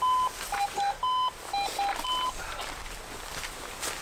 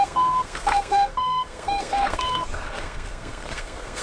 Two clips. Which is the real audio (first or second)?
first